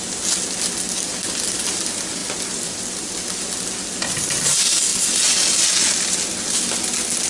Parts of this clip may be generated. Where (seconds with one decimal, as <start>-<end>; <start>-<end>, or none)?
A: 2.2-3.1